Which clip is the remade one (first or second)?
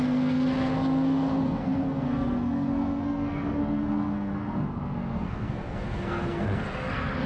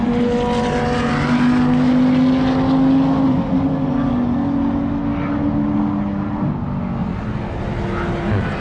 first